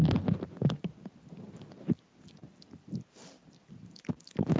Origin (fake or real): real